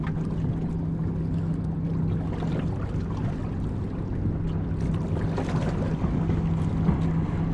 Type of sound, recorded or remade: recorded